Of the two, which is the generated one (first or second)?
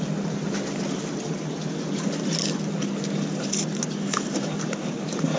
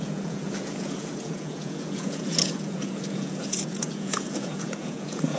second